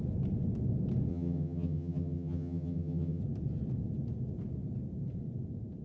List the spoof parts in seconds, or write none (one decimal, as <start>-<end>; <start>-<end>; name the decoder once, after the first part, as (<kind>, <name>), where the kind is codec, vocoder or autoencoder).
1.1-3.2 (vocoder, HiFi-GAN)